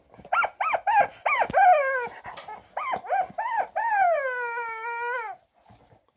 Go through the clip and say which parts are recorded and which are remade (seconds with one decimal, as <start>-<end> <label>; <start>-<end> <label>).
0.0-6.2 recorded